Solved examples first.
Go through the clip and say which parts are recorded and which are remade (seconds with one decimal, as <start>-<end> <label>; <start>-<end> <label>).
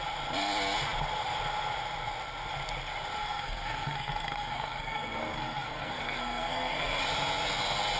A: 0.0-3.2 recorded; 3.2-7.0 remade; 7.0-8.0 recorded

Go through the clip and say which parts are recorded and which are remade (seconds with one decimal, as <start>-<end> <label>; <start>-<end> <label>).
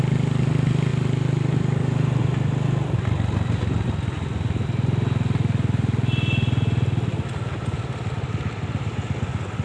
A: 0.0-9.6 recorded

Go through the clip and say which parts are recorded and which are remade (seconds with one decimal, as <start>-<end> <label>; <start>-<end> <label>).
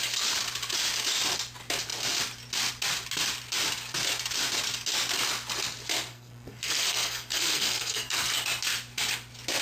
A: 0.0-6.1 recorded; 6.1-8.3 remade; 8.3-9.6 recorded